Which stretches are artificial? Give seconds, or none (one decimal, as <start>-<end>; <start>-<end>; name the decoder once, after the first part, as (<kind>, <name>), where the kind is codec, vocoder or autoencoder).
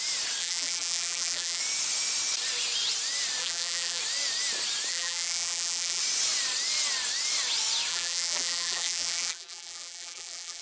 0.4-1.6 (vocoder, BigVGAN v2); 3.4-4.0; 4.9-6.0; 7.9-10.6